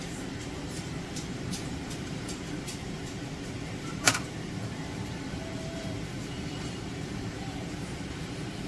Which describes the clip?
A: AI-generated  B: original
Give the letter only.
A